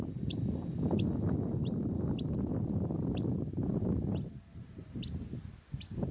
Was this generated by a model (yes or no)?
no